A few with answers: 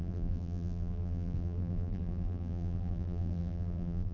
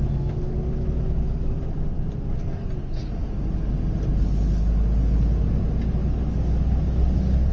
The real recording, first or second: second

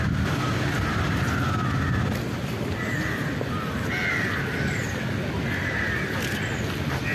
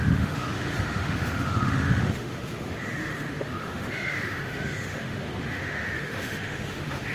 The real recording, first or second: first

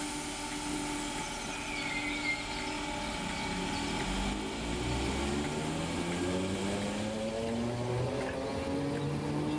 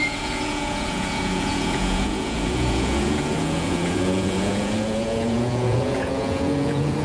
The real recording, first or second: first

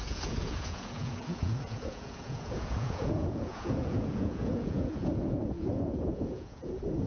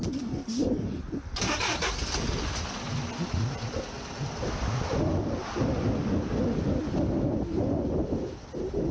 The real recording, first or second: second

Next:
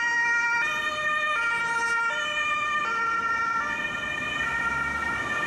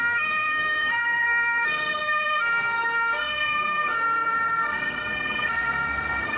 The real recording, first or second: first